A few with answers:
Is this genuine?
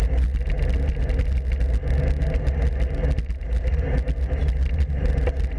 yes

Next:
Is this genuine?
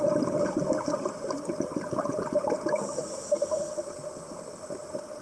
yes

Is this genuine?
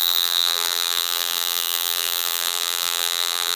no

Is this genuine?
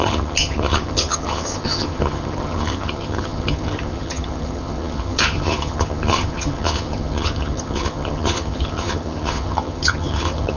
no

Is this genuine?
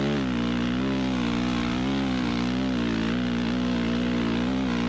yes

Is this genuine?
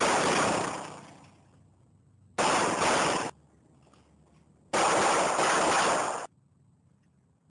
yes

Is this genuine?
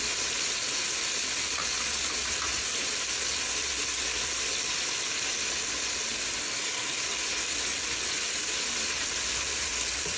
yes